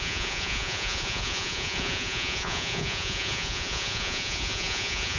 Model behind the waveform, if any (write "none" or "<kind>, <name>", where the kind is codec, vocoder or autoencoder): vocoder, Vocos